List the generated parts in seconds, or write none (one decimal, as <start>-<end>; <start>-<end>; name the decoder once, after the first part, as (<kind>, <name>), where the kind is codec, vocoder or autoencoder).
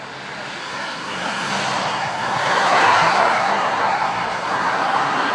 0.6-1.5 (codec, SNAC); 1.9-5.3